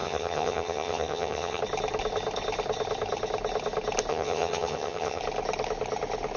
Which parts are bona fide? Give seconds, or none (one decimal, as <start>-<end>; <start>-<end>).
1.6-4.1; 5.2-6.4